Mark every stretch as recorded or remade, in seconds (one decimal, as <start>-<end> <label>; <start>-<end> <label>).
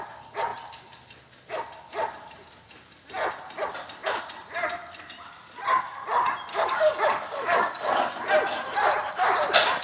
0.0-6.5 recorded; 6.5-7.9 remade; 7.9-9.8 recorded